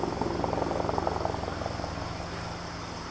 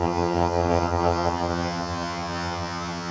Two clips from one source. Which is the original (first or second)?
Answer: first